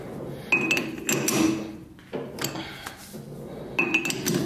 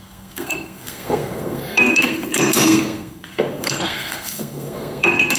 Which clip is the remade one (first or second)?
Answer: second